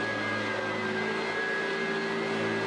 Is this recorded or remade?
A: recorded